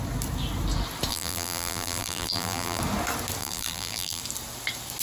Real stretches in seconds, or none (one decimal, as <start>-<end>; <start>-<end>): 0.0-1.1; 2.8-3.4; 4.2-5.0

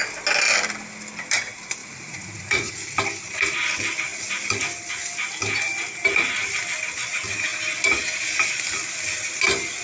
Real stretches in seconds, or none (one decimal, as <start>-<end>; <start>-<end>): 0.0-1.8; 2.7-9.8

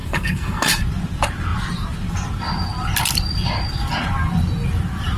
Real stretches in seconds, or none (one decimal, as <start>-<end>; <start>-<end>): 0.8-5.2

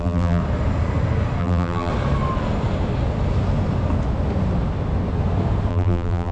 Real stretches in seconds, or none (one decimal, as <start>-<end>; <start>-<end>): 0.4-1.4; 1.9-5.7

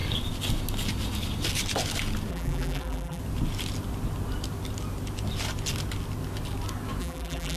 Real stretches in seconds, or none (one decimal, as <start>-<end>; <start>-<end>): 0.0-2.3; 3.2-7.0

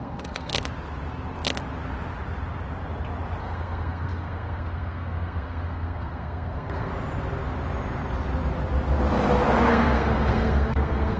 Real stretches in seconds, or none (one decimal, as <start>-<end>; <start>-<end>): 0.5-3.4; 6.9-9.7

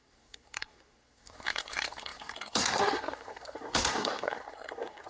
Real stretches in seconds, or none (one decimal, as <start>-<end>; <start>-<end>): none